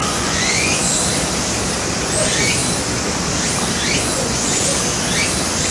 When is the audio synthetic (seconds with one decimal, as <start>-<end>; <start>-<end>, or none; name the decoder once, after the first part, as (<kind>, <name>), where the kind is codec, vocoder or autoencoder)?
0.0-1.0 (vocoder, Vocos); 2.0-2.6; 4.0-4.7